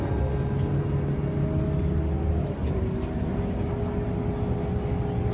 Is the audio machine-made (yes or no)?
no